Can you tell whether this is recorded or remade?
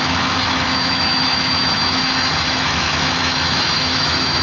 remade